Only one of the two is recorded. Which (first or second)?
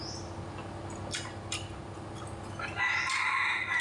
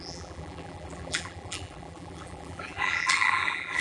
first